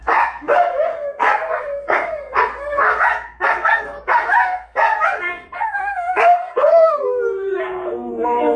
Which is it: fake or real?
fake